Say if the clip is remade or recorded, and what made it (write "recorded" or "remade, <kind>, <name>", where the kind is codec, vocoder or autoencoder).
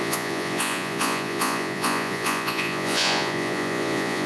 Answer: remade, vocoder, Vocos